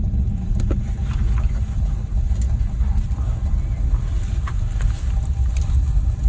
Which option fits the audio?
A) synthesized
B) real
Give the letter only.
B